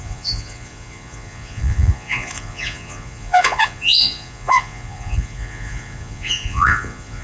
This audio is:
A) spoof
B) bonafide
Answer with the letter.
A